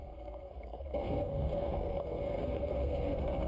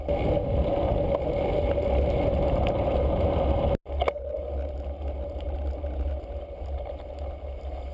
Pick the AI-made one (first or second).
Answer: first